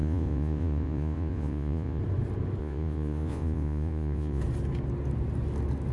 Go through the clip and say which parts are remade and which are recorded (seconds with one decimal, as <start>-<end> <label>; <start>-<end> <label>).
0.0-2.0 remade; 2.0-2.6 recorded; 2.6-4.4 remade; 4.4-5.9 recorded